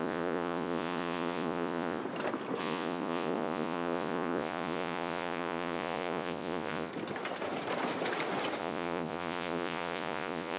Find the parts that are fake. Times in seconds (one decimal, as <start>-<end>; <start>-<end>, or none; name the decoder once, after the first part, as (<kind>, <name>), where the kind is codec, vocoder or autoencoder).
0.0-2.0 (vocoder, Vocos); 2.6-6.9; 8.6-10.6

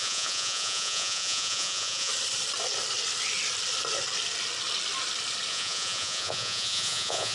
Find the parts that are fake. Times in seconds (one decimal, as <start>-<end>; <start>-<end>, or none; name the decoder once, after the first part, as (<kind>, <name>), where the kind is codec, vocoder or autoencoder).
0.0-2.1 (vocoder, Vocos); 5.5-7.3

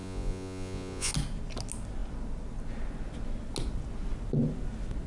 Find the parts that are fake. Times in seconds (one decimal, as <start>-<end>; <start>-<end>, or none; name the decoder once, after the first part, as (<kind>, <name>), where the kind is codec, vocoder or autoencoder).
0.0-1.1 (vocoder, Vocos)

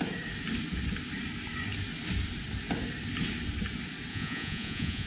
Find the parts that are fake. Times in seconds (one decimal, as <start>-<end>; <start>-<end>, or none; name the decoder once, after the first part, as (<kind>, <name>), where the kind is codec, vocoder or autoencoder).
4.1-5.1 (vocoder, Vocos)

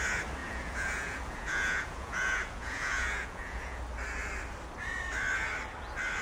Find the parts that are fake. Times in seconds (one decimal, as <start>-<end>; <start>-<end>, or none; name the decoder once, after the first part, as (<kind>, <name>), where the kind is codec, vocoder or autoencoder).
0.4-3.8 (vocoder, Vocos)

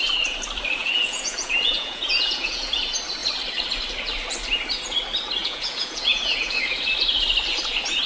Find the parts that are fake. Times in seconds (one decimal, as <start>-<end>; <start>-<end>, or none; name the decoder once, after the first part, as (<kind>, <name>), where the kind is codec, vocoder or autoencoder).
0.8-2.8 (vocoder, Vocos); 5.4-6.8